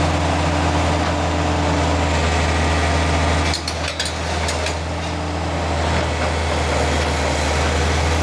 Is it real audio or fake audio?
real